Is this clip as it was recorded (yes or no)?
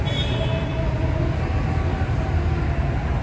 yes